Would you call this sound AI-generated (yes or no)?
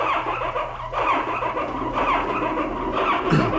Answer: no